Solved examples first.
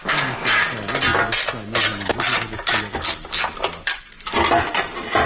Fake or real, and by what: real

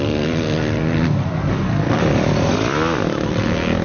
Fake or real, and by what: real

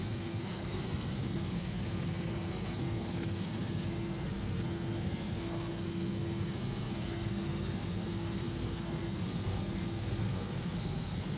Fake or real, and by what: fake, codec, SNAC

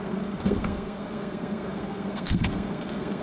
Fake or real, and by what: fake, codec, SNAC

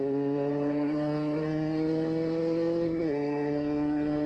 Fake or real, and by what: fake, codec, SNAC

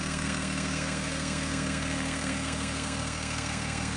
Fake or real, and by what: fake, codec, SNAC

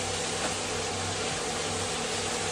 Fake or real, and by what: real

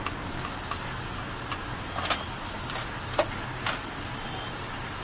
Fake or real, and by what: real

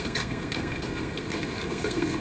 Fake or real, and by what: fake, codec, SNAC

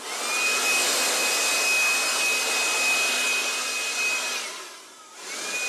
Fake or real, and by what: real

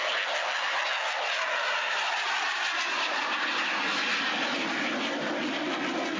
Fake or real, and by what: real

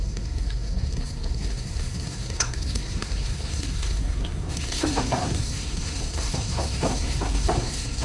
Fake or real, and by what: fake, codec, SNAC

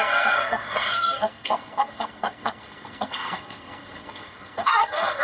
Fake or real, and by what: fake, codec, SNAC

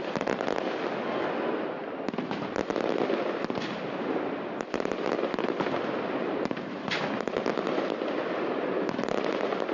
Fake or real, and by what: real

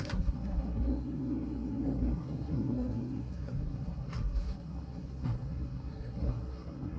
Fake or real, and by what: fake, codec, SNAC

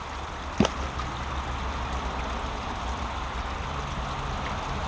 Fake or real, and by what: real